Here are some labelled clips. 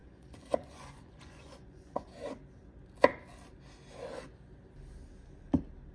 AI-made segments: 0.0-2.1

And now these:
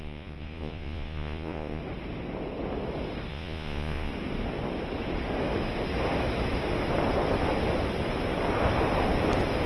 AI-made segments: 0.0-1.8; 3.3-4.1

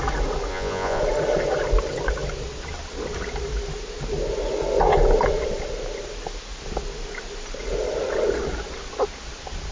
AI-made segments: 0.5-1.0